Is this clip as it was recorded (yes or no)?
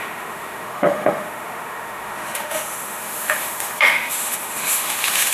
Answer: no